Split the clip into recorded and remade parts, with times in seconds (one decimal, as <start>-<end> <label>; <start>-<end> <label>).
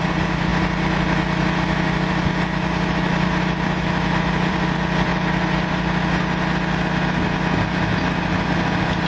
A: 0.0-0.5 remade; 0.5-4.5 recorded; 4.5-5.1 remade; 5.1-8.0 recorded; 8.0-9.1 remade